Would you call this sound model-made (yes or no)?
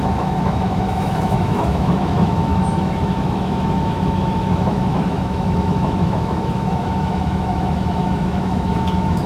yes